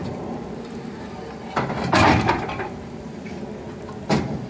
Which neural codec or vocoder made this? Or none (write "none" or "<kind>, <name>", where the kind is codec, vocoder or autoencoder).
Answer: none